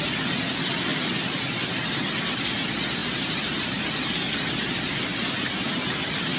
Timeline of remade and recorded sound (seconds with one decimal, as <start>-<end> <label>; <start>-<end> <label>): 0.0-3.0 recorded; 3.0-3.9 remade; 3.9-6.4 recorded